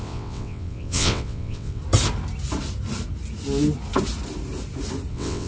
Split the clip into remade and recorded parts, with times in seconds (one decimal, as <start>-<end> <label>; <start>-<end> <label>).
0.0-1.8 remade; 1.8-5.1 recorded; 5.1-5.5 remade